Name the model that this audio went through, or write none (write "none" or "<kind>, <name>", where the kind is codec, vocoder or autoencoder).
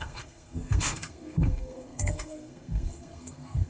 codec, SNAC